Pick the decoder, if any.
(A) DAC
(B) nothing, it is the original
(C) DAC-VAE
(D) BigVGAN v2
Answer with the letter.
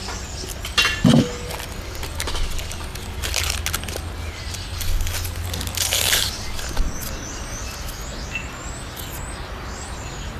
B